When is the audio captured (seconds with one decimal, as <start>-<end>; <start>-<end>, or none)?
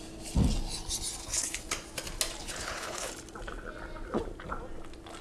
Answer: 0.0-1.2; 1.7-2.4; 3.1-5.2